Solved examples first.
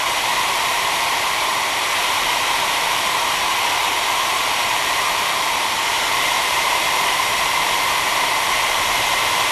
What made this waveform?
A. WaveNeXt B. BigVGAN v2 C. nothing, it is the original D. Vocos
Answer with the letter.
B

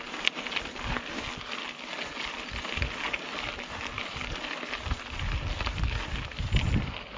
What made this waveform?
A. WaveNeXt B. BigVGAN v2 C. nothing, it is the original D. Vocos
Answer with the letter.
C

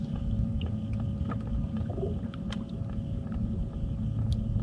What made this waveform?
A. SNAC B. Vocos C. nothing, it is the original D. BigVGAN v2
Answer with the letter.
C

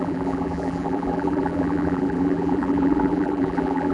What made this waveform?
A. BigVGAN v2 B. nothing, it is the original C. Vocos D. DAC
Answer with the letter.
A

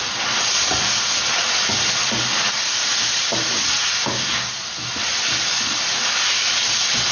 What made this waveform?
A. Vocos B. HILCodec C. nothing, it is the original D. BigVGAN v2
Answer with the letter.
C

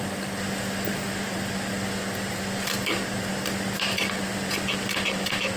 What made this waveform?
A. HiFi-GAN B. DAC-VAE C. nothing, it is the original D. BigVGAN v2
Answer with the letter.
C